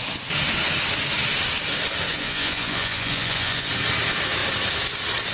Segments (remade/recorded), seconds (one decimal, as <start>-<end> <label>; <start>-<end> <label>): 0.0-2.1 recorded; 2.1-3.7 remade; 3.7-5.3 recorded